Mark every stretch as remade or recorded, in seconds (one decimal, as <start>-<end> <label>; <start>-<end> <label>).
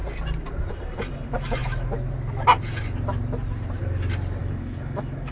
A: 0.0-4.4 recorded; 4.4-5.3 remade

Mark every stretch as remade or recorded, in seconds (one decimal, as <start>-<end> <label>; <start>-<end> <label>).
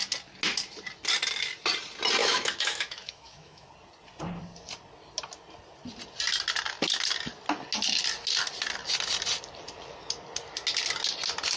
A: 0.0-2.2 recorded; 2.2-3.7 remade; 3.7-11.6 recorded